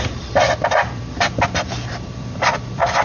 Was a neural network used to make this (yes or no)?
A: yes